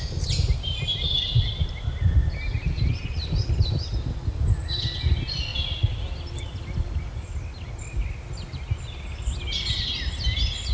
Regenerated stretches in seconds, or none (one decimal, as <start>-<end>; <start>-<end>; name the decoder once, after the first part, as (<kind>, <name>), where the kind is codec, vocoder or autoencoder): none